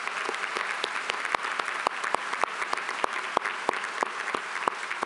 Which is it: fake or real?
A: real